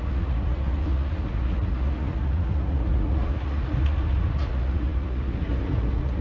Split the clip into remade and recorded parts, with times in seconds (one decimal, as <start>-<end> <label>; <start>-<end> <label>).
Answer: 0.0-6.2 remade